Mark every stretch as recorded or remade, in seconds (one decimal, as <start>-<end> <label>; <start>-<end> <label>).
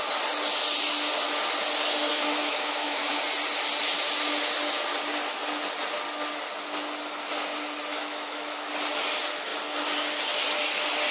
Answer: 0.0-2.1 recorded; 2.1-3.2 remade; 3.2-7.9 recorded; 7.9-8.7 remade; 8.7-11.1 recorded